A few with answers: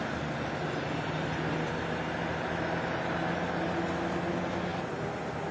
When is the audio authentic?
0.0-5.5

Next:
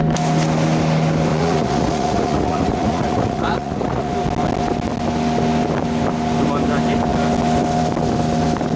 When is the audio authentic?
0.0-1.3; 4.1-8.8

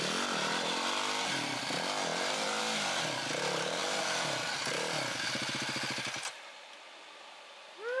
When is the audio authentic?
0.0-8.0

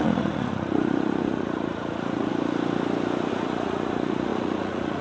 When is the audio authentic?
2.3-3.3